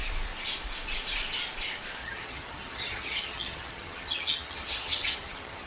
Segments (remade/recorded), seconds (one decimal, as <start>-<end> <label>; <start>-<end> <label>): 0.0-2.0 recorded; 2.0-5.7 remade